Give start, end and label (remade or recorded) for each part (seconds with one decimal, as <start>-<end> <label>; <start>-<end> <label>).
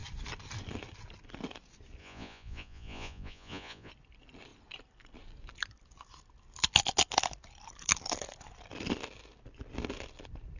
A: 0.0-2.0 recorded; 2.0-3.9 remade; 3.9-10.6 recorded